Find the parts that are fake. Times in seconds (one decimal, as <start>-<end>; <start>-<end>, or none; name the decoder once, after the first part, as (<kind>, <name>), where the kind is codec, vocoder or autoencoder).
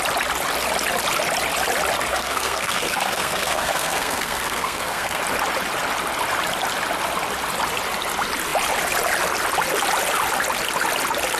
2.1-5.2 (codec, SNAC)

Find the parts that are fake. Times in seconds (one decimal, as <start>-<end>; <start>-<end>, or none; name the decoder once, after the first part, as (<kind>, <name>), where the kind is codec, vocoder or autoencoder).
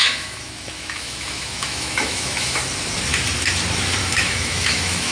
0.0-2.6 (autoencoder, DAC-VAE); 4.0-5.1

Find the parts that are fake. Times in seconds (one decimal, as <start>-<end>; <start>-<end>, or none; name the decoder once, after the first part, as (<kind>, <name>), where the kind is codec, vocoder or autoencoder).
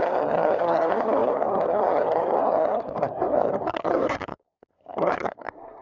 0.0-5.8 (codec, SNAC)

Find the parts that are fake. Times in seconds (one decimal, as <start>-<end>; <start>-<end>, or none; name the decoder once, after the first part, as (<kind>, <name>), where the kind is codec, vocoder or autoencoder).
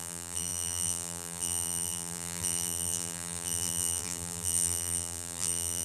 0.0-5.8 (vocoder, BigVGAN v2)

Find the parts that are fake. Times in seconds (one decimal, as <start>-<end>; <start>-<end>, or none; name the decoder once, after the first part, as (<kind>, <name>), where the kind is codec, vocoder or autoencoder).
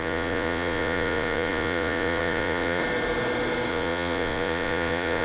0.0-2.8 (vocoder, Vocos); 3.7-5.2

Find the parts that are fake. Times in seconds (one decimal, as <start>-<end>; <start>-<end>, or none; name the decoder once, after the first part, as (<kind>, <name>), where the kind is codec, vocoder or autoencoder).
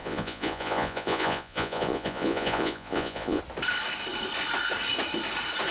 0.0-3.4 (vocoder, Vocos)